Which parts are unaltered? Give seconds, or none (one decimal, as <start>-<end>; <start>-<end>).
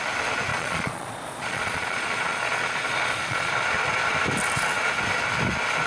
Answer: 0.0-0.5; 3.5-5.9